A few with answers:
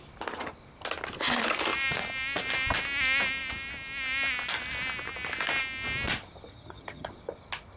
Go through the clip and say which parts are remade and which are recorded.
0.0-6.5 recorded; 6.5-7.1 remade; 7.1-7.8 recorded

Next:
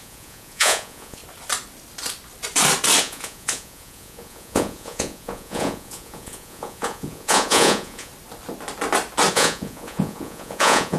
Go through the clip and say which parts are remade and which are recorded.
0.0-1.2 remade; 1.2-3.0 recorded; 3.0-8.1 remade; 8.1-9.3 recorded; 9.3-11.0 remade

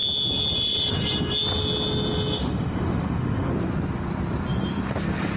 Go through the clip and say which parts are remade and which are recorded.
0.0-2.4 recorded; 2.4-3.5 remade; 3.5-5.4 recorded